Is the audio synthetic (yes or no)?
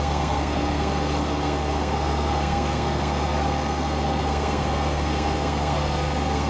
yes